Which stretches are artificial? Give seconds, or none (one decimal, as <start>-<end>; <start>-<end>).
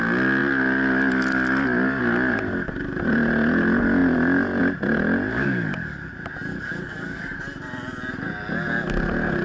5.3-6.1; 6.5-7.2